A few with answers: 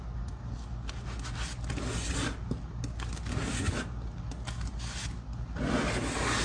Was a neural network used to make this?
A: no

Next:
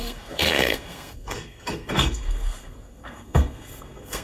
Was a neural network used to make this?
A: yes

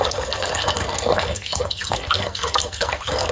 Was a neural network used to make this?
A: yes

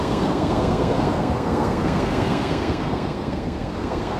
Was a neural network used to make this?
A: yes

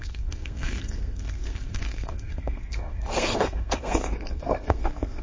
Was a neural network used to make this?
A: yes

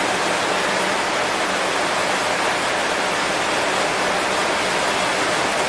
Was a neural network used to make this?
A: no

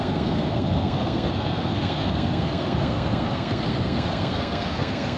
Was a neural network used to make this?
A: yes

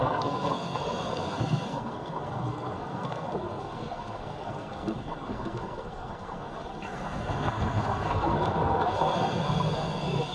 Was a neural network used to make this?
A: yes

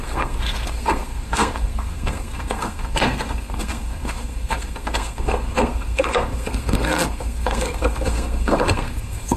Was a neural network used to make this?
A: yes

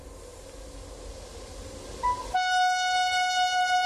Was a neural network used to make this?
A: no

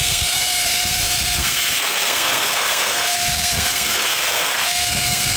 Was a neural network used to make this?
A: yes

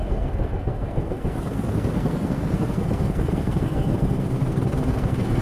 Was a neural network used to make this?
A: yes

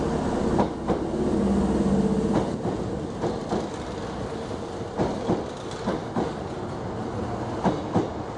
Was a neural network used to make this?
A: no